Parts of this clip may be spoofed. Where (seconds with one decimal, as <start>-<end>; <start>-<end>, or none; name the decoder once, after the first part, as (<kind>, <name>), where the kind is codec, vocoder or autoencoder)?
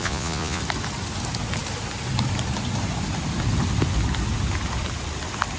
0.0-0.6 (vocoder, Vocos)